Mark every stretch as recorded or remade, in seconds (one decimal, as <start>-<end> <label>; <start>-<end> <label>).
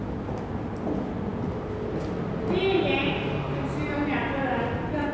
0.0-5.1 recorded